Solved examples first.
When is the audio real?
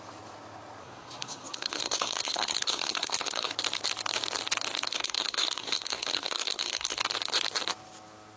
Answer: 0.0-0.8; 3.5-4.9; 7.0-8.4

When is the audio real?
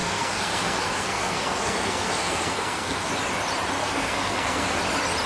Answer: 3.1-3.8; 4.8-5.3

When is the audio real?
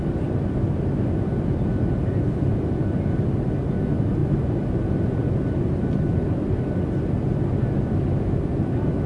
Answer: 0.0-9.1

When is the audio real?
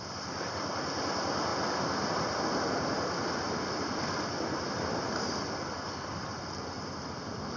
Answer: 0.0-7.6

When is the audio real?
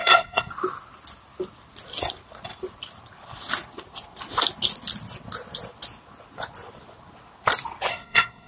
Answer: 0.5-7.9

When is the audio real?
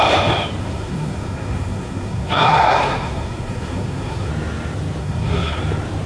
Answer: 0.0-0.6; 4.3-5.0; 5.6-6.1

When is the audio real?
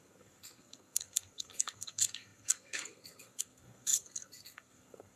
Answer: none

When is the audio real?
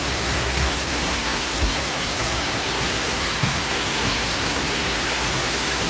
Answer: none